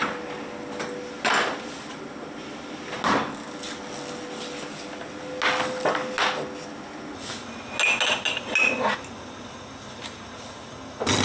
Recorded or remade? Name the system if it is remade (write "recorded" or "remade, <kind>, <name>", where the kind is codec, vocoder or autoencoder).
recorded